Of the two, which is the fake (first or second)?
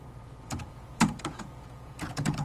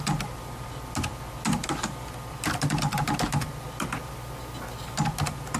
first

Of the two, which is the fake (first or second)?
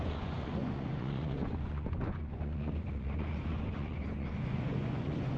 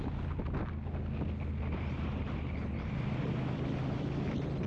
first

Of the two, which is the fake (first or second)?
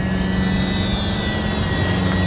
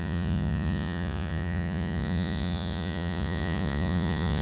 second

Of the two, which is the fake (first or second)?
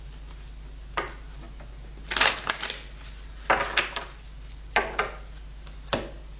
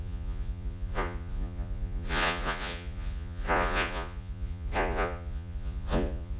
second